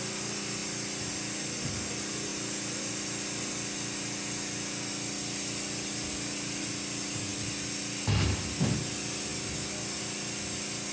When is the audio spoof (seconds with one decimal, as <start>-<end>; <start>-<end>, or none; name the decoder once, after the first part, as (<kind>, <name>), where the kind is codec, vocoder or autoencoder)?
9.3-10.0 (vocoder, BigVGAN v2)